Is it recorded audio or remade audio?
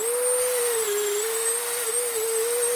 recorded